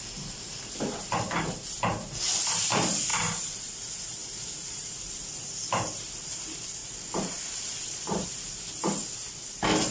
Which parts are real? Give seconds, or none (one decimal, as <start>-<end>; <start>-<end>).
3.1-3.6; 6.8-7.5